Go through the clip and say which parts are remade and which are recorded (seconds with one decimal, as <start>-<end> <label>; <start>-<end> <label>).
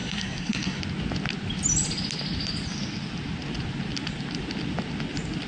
0.0-0.8 remade; 0.8-5.5 recorded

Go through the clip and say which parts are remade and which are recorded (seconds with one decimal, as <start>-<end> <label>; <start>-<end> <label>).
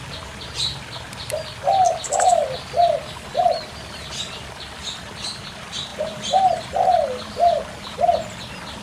0.0-8.8 recorded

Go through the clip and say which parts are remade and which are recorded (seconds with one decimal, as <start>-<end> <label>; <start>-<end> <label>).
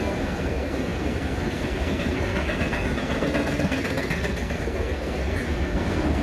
0.0-6.2 remade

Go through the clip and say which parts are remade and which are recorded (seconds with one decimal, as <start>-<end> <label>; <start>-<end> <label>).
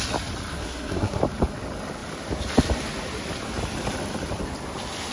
0.0-0.5 recorded; 0.5-1.2 remade; 1.2-5.1 recorded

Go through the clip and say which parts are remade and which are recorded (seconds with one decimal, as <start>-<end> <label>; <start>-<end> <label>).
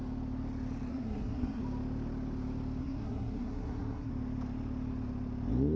0.0-0.9 recorded; 0.9-1.6 remade; 1.6-2.8 recorded; 2.8-4.1 remade; 4.1-5.8 recorded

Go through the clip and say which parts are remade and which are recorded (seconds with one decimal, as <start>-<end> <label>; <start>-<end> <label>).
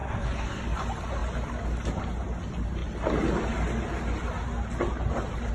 0.0-0.6 remade; 0.6-5.5 recorded